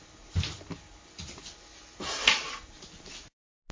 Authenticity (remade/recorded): recorded